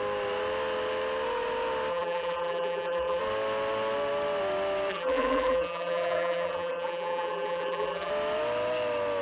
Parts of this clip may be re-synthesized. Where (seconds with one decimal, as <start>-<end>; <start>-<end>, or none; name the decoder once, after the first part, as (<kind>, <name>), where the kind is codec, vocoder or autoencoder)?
1.9-3.2 (vocoder, BigVGAN v2); 4.9-8.1